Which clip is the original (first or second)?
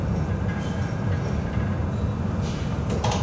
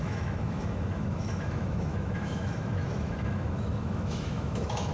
first